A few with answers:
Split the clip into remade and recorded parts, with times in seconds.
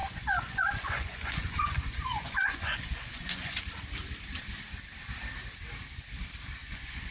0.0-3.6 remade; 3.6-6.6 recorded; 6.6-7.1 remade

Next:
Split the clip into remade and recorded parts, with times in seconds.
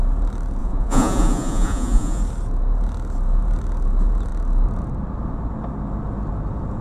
0.0-0.6 recorded; 0.6-2.2 remade; 2.2-6.8 recorded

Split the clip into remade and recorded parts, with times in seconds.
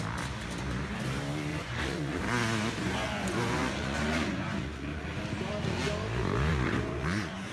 0.0-1.5 recorded; 1.5-2.2 remade; 2.2-2.8 recorded; 2.8-5.2 remade; 5.2-6.5 recorded; 6.5-7.5 remade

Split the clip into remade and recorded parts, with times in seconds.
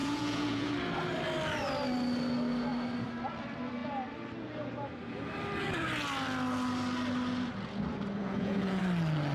0.0-0.7 remade; 0.7-8.2 recorded; 8.2-8.8 remade; 8.8-9.3 recorded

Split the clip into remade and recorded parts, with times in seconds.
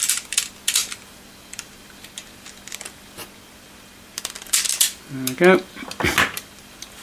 0.0-7.0 recorded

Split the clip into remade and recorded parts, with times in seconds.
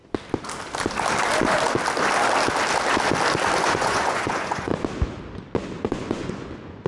0.0-3.6 recorded; 3.6-4.7 remade; 4.7-5.8 recorded; 5.8-6.9 remade